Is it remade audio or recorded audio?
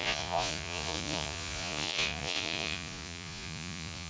remade